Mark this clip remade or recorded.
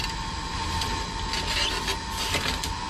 recorded